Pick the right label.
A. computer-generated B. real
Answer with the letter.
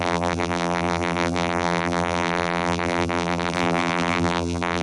A